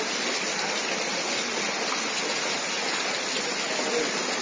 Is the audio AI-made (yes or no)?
no